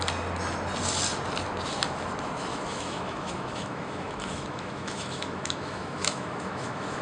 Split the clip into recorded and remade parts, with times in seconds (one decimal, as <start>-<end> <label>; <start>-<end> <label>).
0.0-2.5 recorded; 2.5-7.0 remade